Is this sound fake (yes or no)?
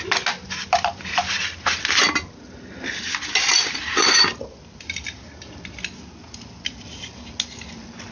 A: no